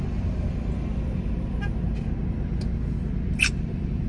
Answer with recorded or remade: recorded